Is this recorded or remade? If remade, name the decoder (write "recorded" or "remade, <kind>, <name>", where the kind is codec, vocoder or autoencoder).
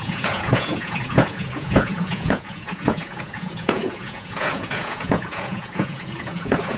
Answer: remade, vocoder, Vocos